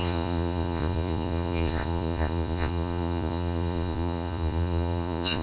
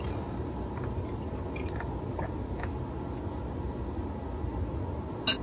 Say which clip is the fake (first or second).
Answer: first